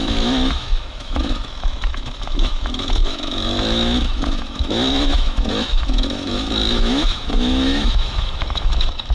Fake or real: fake